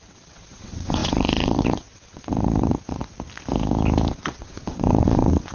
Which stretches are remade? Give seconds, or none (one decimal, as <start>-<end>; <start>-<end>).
0.0-3.0; 4.1-5.5

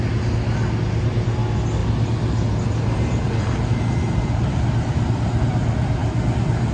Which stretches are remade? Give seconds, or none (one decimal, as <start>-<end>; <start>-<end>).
none